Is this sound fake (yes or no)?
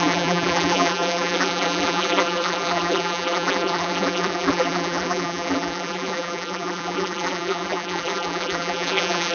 yes